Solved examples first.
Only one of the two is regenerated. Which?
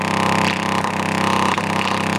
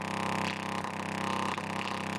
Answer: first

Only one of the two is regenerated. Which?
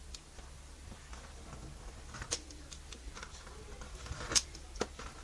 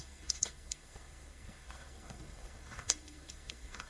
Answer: second